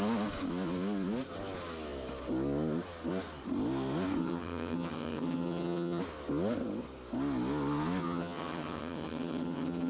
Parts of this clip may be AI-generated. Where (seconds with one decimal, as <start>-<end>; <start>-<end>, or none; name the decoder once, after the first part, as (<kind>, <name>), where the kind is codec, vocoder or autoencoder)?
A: 4.2-6.0 (vocoder, HiFi-GAN); 8.0-9.9